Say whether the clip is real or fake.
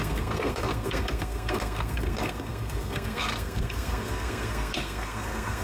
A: fake